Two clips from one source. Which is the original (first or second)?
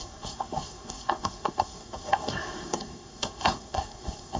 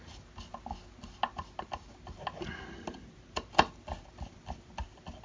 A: second